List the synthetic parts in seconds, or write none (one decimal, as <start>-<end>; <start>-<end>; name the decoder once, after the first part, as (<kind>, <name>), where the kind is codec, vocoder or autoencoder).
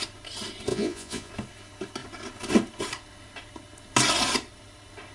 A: 0.7-1.3 (vocoder, Vocos)